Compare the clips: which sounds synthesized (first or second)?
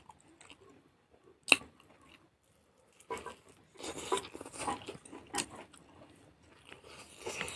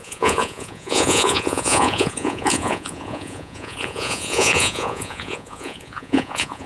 second